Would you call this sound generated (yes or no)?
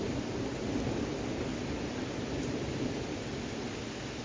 no